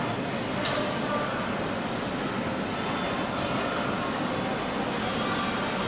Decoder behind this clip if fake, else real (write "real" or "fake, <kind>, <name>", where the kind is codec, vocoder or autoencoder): real